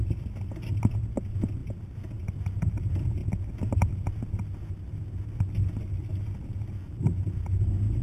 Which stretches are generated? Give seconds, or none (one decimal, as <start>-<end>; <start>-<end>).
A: none